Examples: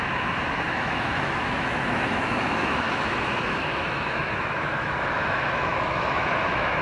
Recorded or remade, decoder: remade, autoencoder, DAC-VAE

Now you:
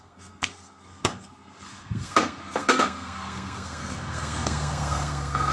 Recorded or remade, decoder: remade, codec, SNAC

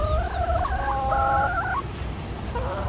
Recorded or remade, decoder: recorded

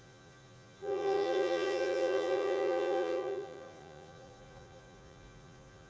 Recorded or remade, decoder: remade, vocoder, Vocos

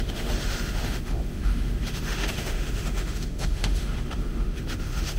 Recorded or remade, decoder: remade, autoencoder, DAC-VAE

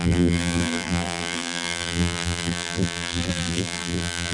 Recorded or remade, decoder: remade, vocoder, BigVGAN v2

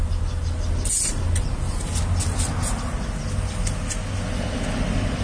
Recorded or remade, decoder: recorded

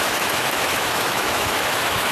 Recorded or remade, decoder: remade, autoencoder, DAC-VAE